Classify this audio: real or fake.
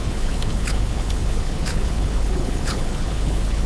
fake